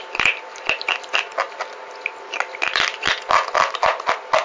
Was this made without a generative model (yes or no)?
yes